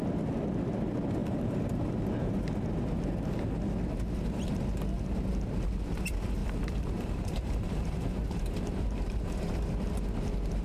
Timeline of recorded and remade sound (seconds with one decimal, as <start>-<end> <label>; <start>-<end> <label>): 0.0-1.2 recorded; 1.2-1.9 remade; 1.9-6.4 recorded; 6.4-9.4 remade; 9.4-10.6 recorded